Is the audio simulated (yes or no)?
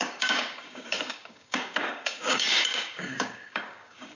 yes